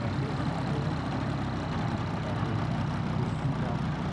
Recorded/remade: remade